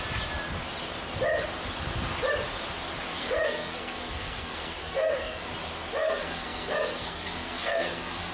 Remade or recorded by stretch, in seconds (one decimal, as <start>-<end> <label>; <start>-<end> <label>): 0.0-3.1 recorded; 3.1-5.5 remade; 5.5-6.0 recorded; 6.0-8.3 remade